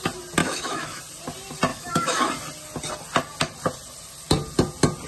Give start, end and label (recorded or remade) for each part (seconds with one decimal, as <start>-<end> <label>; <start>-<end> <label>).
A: 0.0-0.4 recorded; 0.4-1.0 remade; 1.0-1.7 recorded; 1.7-2.3 remade; 2.3-5.1 recorded